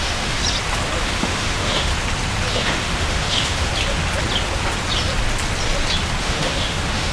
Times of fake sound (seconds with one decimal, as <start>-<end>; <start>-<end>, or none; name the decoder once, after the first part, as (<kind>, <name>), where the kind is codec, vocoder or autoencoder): 0.0-0.4 (autoencoder, DAC-VAE); 1.0-1.9; 2.5-3.7; 6.2-7.1